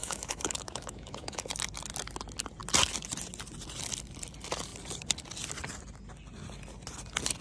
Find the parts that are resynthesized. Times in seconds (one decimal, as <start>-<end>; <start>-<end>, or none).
0.0-1.5